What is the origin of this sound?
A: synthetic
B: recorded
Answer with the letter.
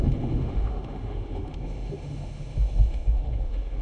A